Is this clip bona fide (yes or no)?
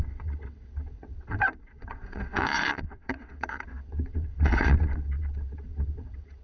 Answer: no